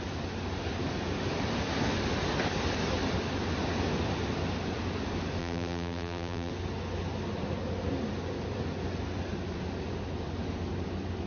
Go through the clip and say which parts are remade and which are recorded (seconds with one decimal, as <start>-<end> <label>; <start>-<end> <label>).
0.0-5.4 recorded; 5.4-6.5 remade; 6.5-11.3 recorded